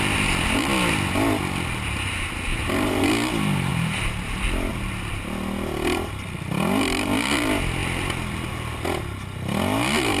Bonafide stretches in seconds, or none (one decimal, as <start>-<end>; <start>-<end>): 0.0-2.5; 3.1-10.2